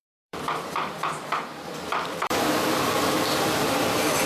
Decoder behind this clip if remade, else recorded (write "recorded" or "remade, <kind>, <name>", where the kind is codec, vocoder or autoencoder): remade, vocoder, BigVGAN v2